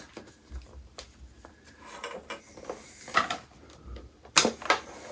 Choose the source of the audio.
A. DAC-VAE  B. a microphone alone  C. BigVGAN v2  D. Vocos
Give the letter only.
B